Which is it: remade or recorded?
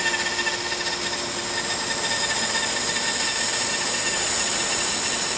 recorded